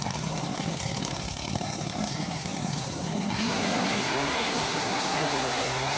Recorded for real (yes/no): no